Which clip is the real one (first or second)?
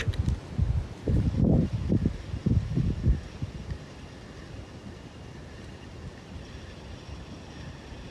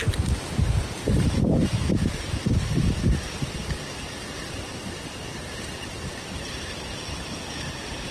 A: first